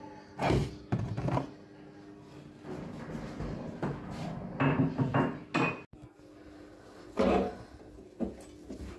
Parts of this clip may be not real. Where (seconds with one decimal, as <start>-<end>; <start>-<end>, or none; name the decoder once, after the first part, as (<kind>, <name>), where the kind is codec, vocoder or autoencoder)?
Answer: none